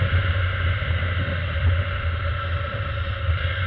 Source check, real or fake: real